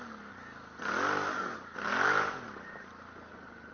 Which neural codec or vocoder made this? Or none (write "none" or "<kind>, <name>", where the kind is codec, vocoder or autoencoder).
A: none